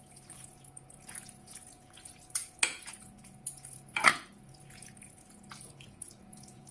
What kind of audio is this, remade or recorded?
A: remade